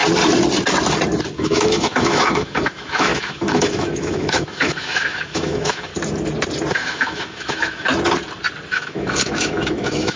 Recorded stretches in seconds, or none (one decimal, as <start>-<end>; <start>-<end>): 0.0-1.3; 5.9-6.7; 7.9-8.7